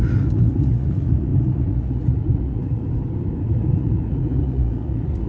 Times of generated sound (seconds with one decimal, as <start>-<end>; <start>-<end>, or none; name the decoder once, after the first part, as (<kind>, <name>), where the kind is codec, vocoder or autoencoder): 0.0-2.8 (vocoder, Vocos); 3.5-5.3